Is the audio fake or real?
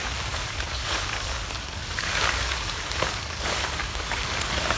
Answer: fake